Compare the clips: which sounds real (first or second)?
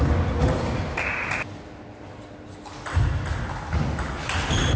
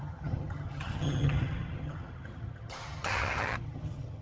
first